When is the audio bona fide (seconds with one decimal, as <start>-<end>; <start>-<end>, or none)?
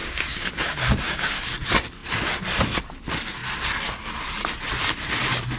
1.4-5.6